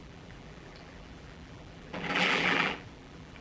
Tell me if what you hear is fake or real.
fake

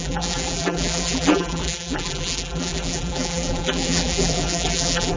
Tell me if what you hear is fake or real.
fake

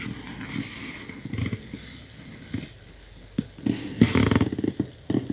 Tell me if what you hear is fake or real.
real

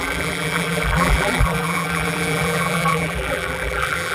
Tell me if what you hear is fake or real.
fake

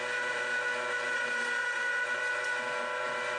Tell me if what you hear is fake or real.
fake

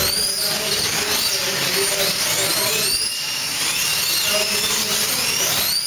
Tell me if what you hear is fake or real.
real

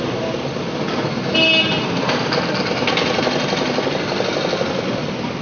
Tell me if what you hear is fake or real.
real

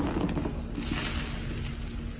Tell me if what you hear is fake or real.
real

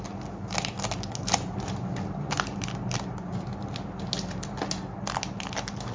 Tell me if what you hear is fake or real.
real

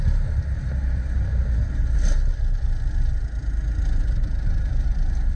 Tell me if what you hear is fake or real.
real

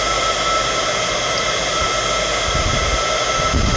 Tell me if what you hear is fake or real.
real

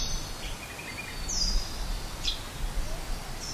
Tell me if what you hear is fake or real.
real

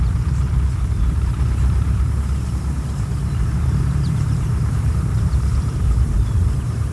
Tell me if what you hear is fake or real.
fake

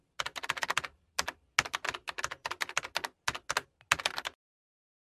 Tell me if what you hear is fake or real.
real